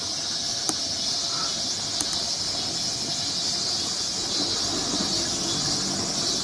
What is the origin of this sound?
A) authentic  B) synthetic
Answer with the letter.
A